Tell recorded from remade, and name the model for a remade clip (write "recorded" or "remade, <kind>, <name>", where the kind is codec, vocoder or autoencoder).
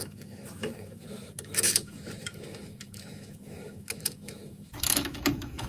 remade, autoencoder, DAC-VAE